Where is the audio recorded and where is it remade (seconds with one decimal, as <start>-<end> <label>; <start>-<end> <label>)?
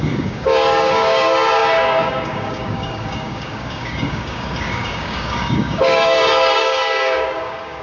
0.0-7.8 remade